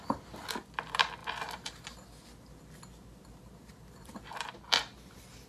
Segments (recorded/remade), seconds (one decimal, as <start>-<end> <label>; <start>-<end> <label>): 0.0-1.2 remade; 1.2-3.7 recorded; 3.7-5.5 remade